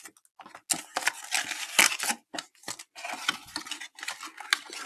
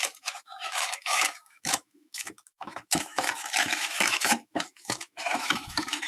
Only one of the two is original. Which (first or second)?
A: first